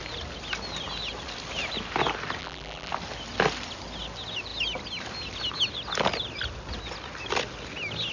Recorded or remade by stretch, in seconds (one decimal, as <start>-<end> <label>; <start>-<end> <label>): 0.0-2.4 recorded; 2.4-2.9 remade; 2.9-8.1 recorded